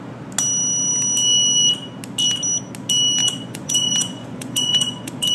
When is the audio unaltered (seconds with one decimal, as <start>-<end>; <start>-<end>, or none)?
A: 0.0-3.2